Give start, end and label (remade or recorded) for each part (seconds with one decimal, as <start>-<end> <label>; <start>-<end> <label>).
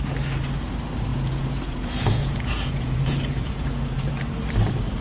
0.0-1.1 recorded; 1.1-4.1 remade; 4.1-5.0 recorded